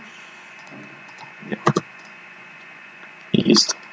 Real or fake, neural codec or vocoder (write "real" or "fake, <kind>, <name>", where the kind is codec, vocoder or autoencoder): fake, vocoder, Vocos